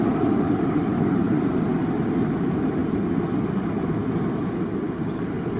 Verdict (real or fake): real